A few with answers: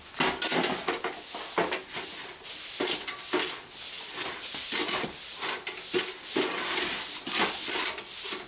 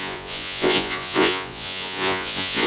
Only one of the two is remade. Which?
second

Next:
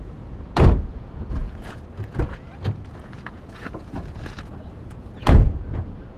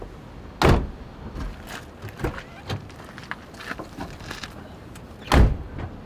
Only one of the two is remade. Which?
first